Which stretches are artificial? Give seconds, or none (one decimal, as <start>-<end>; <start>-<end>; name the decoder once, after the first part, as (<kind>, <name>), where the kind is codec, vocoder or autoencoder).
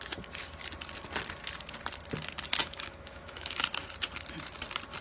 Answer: 2.6-3.6 (autoencoder, DAC-VAE)